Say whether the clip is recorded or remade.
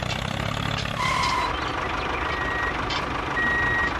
recorded